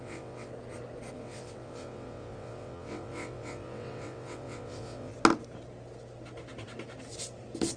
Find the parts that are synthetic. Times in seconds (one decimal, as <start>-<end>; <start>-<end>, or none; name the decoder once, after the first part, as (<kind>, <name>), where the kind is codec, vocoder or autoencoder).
0.0-0.5 (vocoder, WaveNeXt); 1.1-5.1